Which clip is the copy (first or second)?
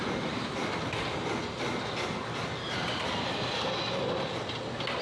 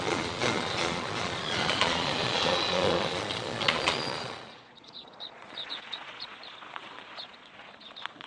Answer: second